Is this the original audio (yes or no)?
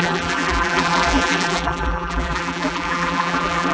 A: no